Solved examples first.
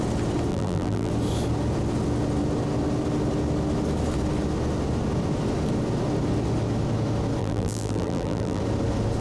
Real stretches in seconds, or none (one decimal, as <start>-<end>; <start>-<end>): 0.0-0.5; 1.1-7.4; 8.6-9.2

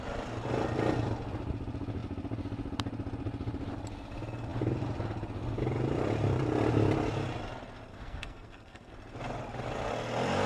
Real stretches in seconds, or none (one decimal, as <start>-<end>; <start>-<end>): 0.0-7.9; 8.9-10.5

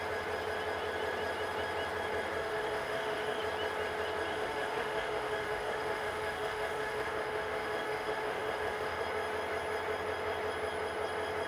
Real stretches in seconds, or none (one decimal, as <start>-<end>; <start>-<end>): 0.0-2.4; 3.4-4.3; 9.0-11.5